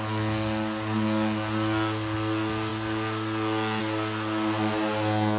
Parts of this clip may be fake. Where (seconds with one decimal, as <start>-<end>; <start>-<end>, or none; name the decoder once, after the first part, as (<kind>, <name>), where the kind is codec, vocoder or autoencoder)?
none